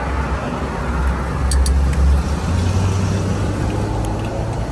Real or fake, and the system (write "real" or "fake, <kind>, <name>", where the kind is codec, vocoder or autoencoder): real